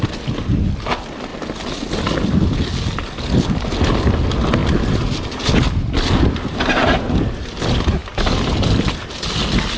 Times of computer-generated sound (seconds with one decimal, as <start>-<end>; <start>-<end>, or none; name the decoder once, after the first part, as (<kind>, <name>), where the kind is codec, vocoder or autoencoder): none